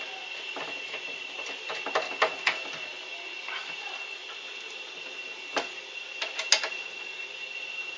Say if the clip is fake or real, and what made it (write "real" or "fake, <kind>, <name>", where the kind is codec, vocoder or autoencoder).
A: real